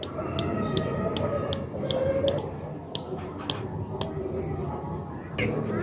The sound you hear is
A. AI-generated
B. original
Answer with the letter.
B